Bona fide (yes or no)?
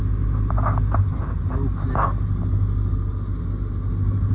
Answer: yes